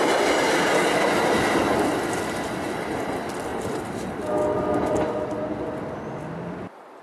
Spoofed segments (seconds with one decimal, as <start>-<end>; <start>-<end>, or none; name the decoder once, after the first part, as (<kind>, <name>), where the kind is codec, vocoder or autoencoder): 3.5-4.3 (vocoder, BigVGAN v2)